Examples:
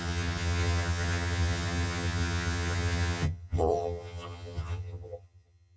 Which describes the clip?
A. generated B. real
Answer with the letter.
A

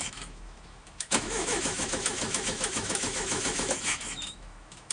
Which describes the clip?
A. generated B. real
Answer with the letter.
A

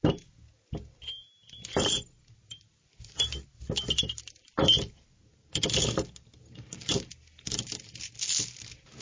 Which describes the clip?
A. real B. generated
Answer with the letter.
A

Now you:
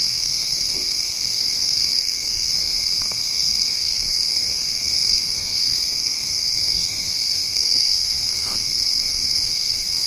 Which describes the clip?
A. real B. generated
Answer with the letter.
B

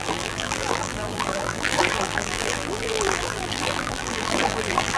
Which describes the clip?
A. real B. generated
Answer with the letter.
B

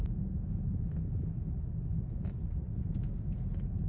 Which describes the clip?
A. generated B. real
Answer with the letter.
B